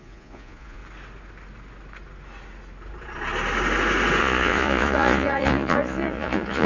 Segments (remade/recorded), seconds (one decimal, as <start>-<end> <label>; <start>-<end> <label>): 0.0-0.8 remade; 0.8-4.2 recorded; 4.2-6.7 remade